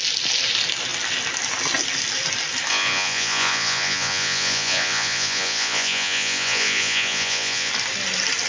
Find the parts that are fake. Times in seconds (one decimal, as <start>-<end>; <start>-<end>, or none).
2.7-7.7